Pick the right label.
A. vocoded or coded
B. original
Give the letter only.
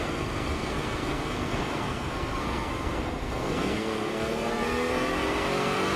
A